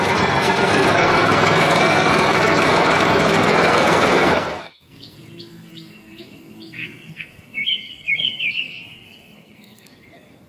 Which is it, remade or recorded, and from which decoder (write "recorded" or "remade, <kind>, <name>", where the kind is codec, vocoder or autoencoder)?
remade, codec, SNAC